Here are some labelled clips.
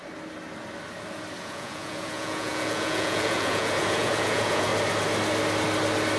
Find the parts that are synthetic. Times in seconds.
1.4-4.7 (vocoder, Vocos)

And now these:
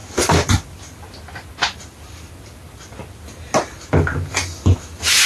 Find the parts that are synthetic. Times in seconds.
none

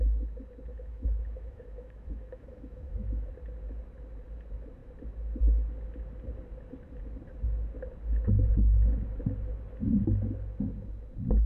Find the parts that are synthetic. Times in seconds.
0.7-3.3 (autoencoder, DAC-VAE)